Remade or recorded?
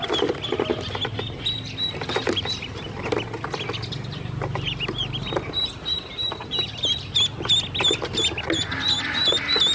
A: recorded